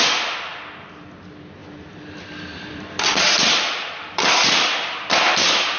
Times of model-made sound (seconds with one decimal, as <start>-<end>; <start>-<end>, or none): 1.6-5.1